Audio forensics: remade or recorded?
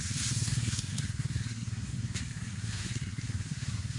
remade